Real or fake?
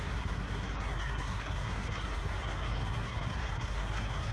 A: fake